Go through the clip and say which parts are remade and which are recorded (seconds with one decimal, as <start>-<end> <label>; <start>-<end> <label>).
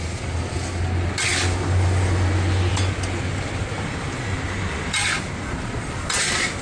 0.0-6.6 recorded